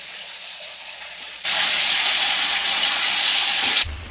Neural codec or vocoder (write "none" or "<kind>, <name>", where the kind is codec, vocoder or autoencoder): vocoder, Vocos